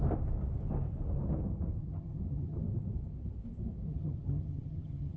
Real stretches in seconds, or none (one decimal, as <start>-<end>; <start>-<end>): 0.0-1.8; 2.6-3.9